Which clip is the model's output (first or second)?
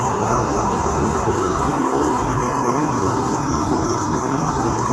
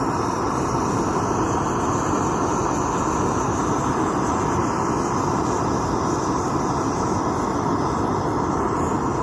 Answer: first